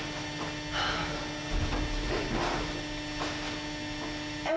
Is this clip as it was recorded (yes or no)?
yes